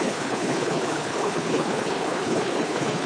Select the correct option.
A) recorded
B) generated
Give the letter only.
B